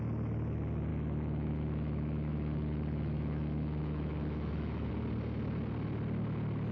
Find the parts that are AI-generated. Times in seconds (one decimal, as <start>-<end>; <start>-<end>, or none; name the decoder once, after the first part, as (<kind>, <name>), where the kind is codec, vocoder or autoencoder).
0.9-4.9 (autoencoder, DAC-VAE)